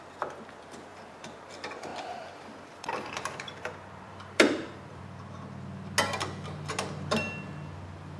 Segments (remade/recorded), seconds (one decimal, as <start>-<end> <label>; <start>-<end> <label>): 0.0-0.9 recorded; 0.9-1.5 remade; 1.5-1.9 recorded; 1.9-5.0 remade; 5.0-8.2 recorded